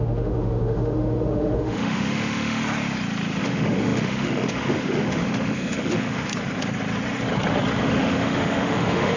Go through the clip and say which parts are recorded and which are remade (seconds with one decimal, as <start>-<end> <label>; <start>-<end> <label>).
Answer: 0.0-2.6 remade; 2.6-3.4 recorded; 3.4-6.3 remade; 6.3-7.8 recorded; 7.8-9.2 remade